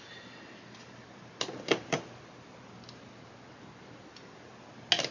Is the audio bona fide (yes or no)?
yes